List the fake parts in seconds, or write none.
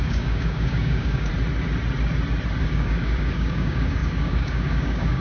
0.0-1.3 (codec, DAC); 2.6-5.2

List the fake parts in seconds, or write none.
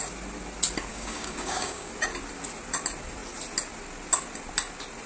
0.9-1.9 (codec, DAC)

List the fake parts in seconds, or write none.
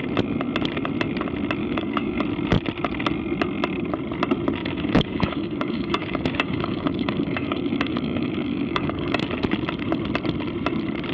1.6-2.2 (codec, DAC); 4.6-9.3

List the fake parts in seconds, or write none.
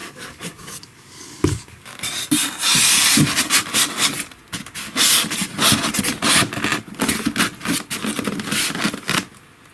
0.0-2.0 (codec, DAC)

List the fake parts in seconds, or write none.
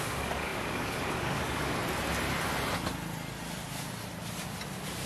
0.0-1.8 (codec, DAC)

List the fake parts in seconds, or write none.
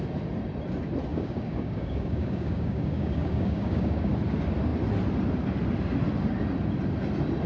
1.1-4.1 (codec, DAC)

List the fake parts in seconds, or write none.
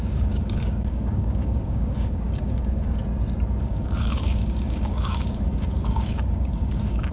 0.0-3.0 (codec, DAC); 3.6-7.1